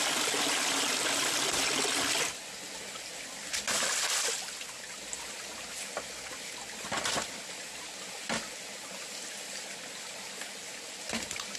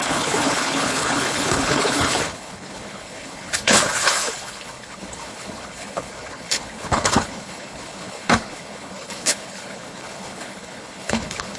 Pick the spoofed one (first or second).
second